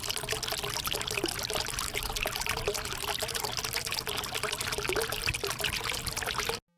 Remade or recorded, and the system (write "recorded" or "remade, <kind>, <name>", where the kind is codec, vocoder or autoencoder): recorded